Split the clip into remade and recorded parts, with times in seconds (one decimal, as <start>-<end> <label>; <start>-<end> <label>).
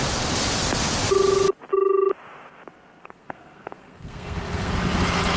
0.0-3.0 recorded; 3.0-4.7 remade; 4.7-5.4 recorded